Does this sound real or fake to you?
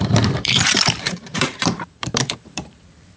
fake